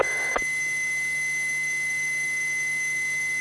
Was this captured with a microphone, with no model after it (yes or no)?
no